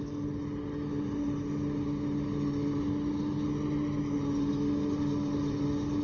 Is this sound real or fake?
real